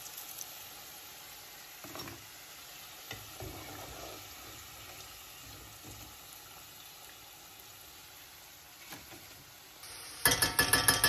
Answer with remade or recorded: recorded